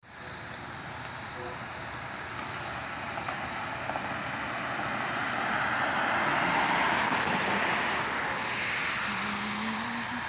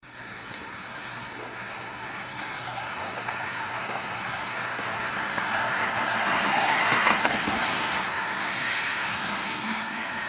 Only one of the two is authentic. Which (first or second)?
first